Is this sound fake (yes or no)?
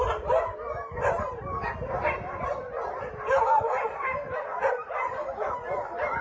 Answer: no